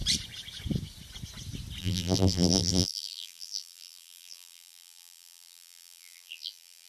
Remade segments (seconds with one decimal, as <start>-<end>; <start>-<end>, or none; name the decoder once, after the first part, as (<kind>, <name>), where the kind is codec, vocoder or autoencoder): 1.8-6.9 (vocoder, BigVGAN v2)